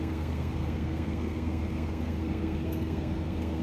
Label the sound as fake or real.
fake